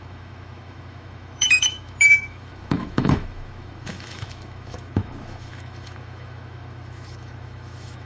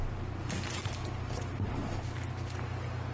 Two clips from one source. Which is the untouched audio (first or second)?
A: second